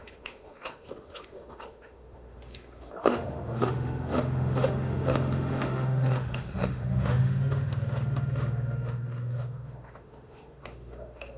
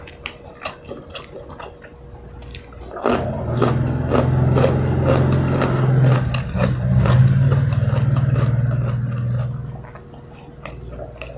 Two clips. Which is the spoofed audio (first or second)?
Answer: first